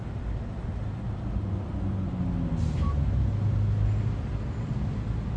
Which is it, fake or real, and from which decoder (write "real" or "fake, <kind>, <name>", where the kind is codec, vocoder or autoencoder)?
real